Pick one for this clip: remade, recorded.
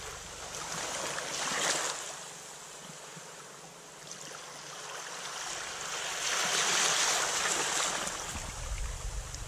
recorded